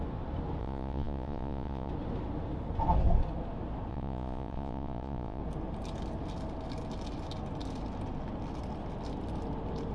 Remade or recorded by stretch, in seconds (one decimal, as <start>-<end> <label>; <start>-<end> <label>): 0.0-0.6 recorded; 0.6-1.9 remade; 1.9-3.9 recorded; 3.9-5.4 remade; 5.4-9.9 recorded